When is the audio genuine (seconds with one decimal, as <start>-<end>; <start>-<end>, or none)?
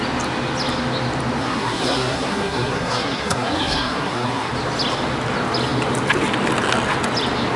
0.0-1.4; 4.5-7.6